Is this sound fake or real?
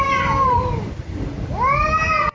real